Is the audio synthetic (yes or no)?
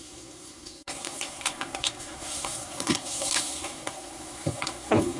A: yes